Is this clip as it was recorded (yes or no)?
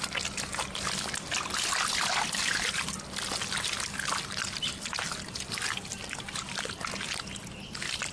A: yes